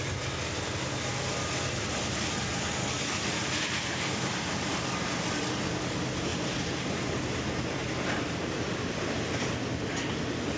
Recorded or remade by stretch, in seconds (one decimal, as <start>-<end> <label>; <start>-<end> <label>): 0.0-10.6 remade